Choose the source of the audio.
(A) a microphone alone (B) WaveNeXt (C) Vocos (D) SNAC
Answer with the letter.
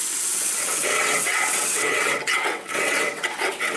B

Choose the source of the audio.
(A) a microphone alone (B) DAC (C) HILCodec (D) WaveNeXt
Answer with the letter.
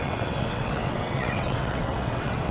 D